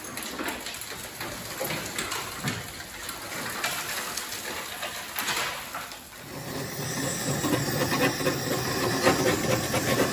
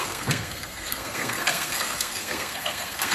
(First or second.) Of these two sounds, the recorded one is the first